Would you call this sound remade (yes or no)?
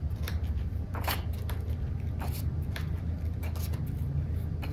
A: yes